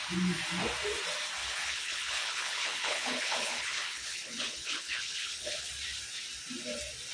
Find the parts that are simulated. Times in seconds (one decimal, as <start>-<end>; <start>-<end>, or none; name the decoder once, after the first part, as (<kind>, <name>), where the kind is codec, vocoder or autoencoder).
1.4-5.7 (codec, HILCodec)